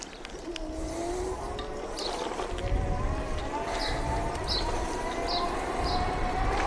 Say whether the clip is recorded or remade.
recorded